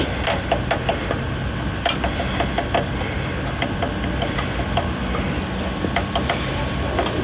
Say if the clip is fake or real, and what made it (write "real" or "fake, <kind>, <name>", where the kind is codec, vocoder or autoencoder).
real